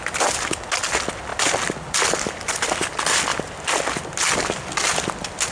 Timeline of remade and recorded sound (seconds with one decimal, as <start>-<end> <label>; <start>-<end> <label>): 0.0-5.5 recorded